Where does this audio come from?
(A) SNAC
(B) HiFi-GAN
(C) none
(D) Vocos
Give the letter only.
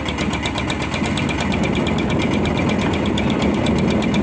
C